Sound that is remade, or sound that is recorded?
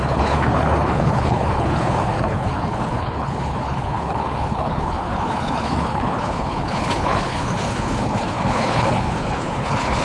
remade